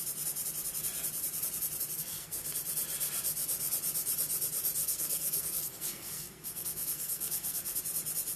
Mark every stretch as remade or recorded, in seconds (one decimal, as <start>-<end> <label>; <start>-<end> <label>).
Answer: 0.0-2.0 recorded; 2.0-2.5 remade; 2.5-4.8 recorded; 4.8-7.8 remade; 7.8-8.4 recorded